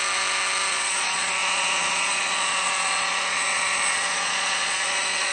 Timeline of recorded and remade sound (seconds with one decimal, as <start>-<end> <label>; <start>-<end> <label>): 0.0-0.7 recorded; 0.7-5.3 remade